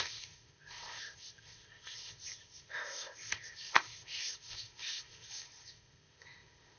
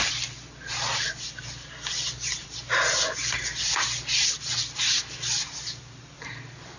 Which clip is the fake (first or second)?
first